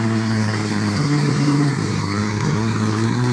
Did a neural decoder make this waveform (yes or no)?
yes